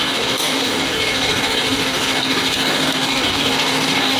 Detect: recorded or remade remade